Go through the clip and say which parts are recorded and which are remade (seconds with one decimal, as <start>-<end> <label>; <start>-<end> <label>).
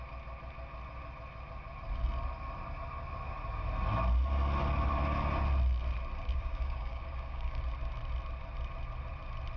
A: 0.0-6.3 recorded; 6.3-7.6 remade; 7.6-9.6 recorded